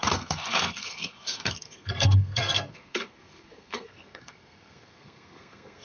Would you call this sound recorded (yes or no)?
no